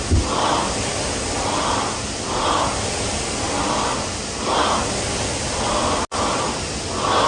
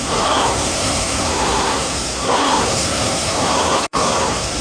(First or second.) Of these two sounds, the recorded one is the first